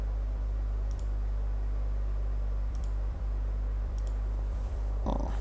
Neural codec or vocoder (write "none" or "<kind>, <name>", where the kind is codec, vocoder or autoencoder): vocoder, BigVGAN v2